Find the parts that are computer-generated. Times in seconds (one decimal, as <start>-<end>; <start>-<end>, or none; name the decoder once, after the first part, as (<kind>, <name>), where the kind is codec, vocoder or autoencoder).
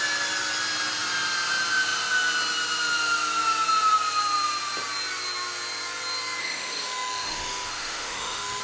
6.4-8.6 (autoencoder, DAC-VAE)